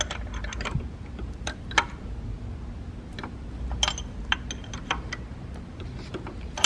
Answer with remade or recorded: recorded